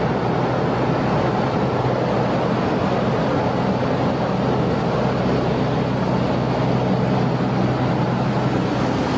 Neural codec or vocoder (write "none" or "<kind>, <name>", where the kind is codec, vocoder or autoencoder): none